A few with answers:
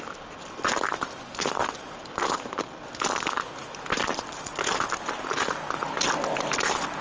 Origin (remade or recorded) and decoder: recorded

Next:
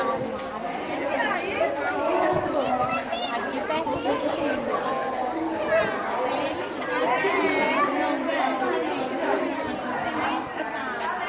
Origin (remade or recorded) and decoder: recorded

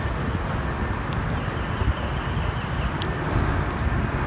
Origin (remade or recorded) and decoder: recorded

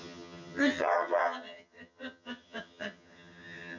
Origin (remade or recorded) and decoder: remade, vocoder, HiFi-GAN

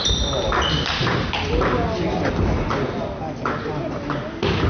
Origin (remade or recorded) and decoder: recorded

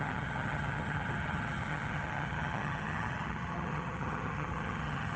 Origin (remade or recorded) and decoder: remade, vocoder, HiFi-GAN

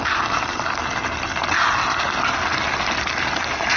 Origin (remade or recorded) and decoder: recorded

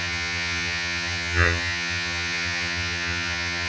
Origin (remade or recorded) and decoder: remade, vocoder, HiFi-GAN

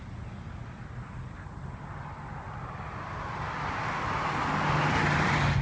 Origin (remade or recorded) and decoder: recorded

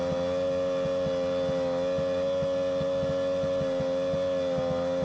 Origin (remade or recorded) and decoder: recorded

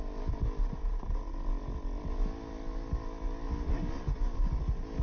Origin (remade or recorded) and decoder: recorded